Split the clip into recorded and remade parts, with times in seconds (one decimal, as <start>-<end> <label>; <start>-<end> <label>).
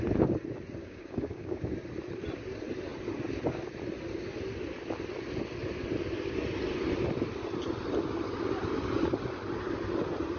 0.0-0.8 recorded; 0.8-1.6 remade; 1.6-10.4 recorded